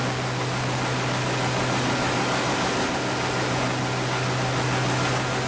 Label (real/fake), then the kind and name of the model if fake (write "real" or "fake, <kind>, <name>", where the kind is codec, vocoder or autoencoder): real